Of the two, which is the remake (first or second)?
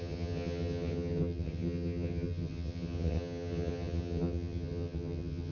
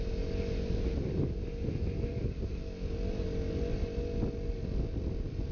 first